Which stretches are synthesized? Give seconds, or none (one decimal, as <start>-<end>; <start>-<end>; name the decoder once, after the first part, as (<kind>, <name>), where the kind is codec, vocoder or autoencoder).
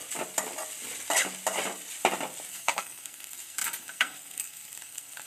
2.5-5.3 (codec, SNAC)